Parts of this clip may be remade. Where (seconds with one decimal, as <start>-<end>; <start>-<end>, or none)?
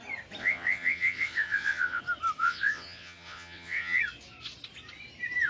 0.4-2.0; 2.4-4.0